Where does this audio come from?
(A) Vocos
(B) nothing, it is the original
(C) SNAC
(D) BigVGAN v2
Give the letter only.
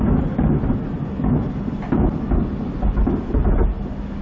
B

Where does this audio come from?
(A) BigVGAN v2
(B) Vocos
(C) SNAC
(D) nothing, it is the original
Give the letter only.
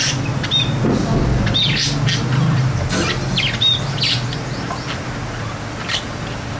D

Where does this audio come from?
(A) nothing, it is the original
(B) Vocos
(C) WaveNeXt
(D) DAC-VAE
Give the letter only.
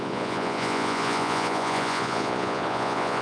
B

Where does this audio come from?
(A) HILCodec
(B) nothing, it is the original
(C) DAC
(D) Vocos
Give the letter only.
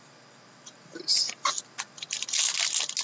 B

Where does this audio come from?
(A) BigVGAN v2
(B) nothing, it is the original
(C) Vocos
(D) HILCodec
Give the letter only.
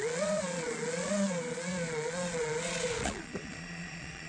C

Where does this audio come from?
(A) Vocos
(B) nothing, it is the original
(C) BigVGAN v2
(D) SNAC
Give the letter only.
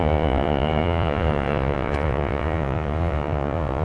A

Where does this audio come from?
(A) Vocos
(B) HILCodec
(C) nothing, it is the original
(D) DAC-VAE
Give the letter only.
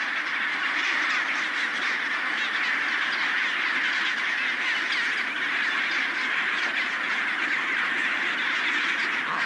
C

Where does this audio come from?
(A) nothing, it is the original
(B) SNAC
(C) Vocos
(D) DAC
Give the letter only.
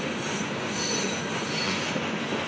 C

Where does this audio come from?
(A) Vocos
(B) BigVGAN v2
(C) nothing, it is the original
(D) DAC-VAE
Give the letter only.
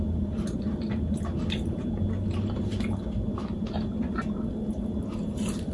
C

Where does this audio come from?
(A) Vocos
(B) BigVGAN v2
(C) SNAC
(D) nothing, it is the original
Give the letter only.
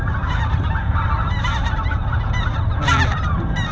D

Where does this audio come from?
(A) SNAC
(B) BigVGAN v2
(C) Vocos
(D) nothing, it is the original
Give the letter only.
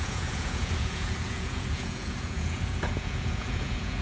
C